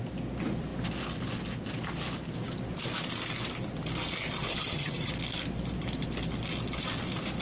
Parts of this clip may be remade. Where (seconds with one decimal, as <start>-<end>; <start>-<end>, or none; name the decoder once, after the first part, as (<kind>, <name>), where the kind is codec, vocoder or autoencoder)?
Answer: 4.5-5.1 (vocoder, HiFi-GAN)